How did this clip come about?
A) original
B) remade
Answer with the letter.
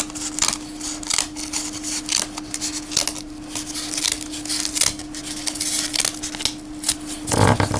A